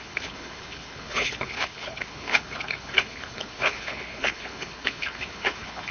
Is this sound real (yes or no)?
no